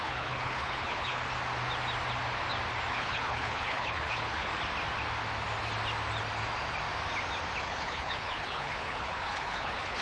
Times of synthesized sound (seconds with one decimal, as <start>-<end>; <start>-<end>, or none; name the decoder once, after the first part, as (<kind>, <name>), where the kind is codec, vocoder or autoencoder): 0.0-1.2 (codec, HILCodec); 2.9-4.5; 7.6-10.0